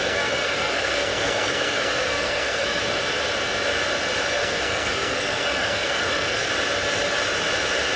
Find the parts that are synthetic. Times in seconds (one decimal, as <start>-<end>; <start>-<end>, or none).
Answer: 0.0-2.8; 4.3-6.5